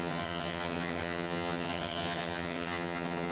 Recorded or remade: remade